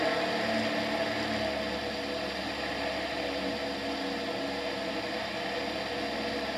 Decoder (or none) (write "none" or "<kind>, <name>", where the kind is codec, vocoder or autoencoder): none